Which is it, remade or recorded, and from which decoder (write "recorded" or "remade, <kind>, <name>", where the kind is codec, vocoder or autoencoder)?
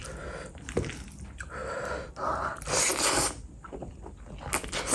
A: recorded